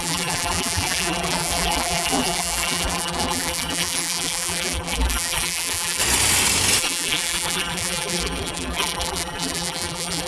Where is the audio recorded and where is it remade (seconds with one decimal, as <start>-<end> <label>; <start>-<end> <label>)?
0.0-6.0 remade; 6.0-6.8 recorded; 6.8-10.3 remade